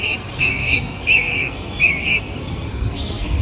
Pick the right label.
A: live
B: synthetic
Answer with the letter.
B